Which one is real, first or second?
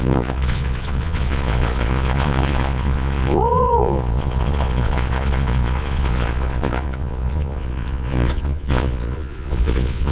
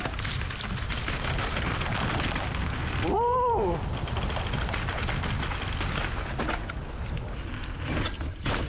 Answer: second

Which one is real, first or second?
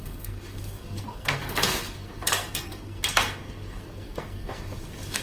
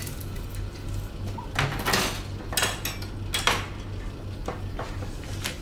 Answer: second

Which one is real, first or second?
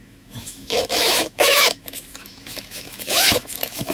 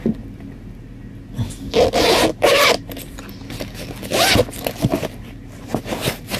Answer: second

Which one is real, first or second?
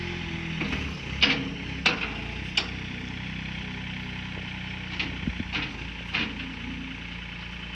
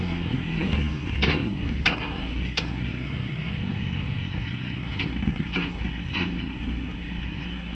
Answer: first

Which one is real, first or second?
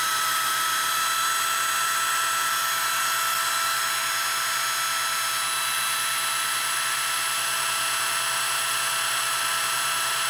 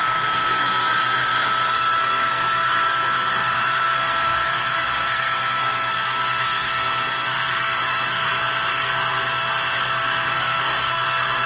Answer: first